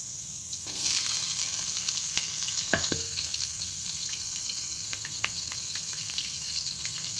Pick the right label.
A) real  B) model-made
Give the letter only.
B